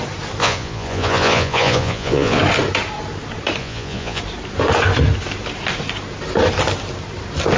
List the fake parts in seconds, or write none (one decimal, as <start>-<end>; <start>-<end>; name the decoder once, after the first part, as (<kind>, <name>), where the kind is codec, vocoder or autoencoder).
0.4-2.4 (vocoder, Vocos); 3.6-4.2